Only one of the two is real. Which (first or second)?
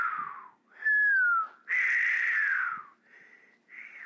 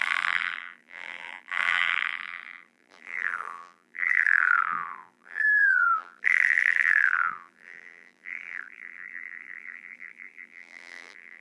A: first